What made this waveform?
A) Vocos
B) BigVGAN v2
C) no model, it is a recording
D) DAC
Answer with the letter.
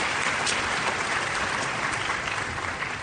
B